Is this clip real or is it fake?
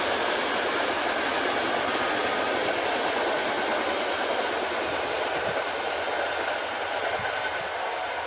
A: real